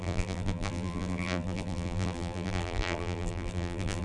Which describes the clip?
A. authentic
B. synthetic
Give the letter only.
B